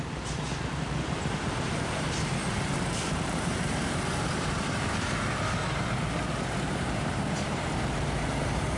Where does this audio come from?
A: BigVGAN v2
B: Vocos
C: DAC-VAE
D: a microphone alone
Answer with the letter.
A